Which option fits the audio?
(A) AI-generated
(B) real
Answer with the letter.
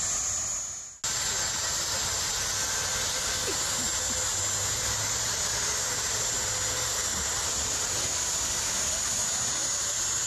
B